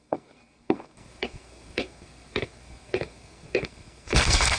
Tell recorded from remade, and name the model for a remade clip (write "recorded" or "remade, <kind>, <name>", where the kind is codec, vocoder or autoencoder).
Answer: remade, codec, SNAC